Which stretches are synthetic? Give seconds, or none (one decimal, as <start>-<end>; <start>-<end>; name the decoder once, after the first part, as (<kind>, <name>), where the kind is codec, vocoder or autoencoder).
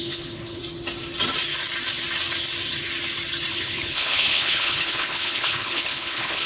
0.0-0.6 (codec, HILCodec); 3.5-6.5